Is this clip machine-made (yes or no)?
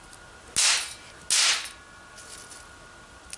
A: no